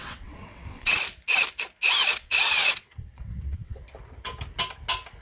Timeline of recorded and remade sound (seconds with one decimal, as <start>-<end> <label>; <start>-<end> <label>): 0.0-1.0 remade; 1.0-2.1 recorded; 2.1-3.8 remade; 3.8-5.2 recorded